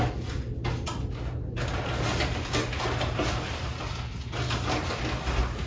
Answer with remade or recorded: recorded